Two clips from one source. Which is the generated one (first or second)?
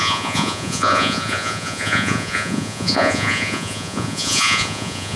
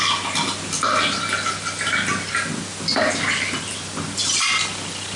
first